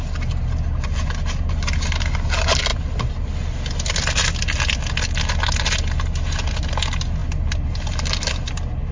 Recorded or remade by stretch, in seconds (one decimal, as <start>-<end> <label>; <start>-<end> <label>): 0.0-8.9 recorded